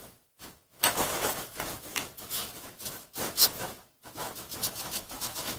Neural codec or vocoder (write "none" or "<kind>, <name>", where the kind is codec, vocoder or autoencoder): autoencoder, DAC-VAE